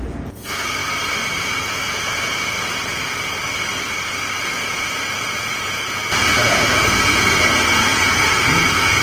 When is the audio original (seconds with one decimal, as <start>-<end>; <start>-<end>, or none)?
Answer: 0.8-1.4; 3.4-4.4